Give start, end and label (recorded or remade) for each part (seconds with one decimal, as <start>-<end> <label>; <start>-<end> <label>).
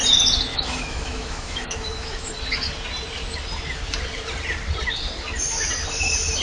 0.0-0.5 recorded; 0.5-2.3 remade; 2.3-6.4 recorded